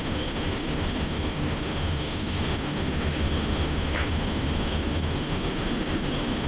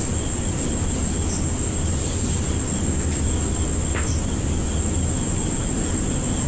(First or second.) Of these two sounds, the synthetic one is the first